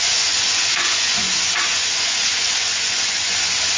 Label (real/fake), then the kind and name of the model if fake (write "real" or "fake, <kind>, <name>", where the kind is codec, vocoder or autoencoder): fake, vocoder, Vocos